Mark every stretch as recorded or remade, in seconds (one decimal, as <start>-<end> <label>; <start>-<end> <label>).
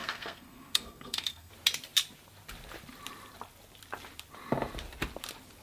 0.0-1.5 remade; 1.5-5.6 recorded